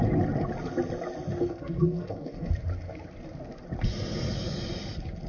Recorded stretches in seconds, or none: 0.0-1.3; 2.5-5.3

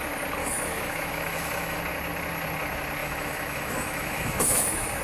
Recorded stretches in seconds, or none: 0.0-0.4; 1.8-3.0

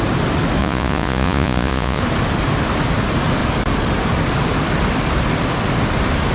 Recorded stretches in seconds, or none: 0.0-0.6; 2.0-6.3

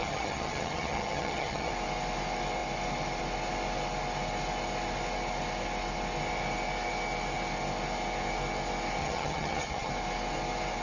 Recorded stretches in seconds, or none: 1.7-9.0; 9.9-10.8

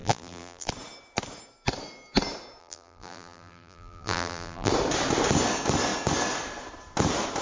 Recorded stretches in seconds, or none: 0.7-2.6; 4.7-7.4